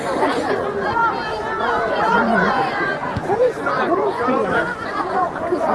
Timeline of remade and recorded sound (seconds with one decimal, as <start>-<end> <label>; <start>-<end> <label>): 0.0-1.0 remade; 1.0-1.6 recorded; 1.6-5.7 remade